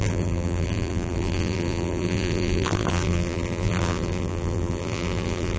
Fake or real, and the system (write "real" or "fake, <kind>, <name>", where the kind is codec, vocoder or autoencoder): fake, vocoder, BigVGAN v2